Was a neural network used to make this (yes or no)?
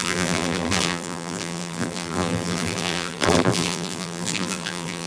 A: yes